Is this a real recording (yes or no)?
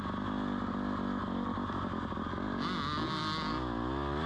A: yes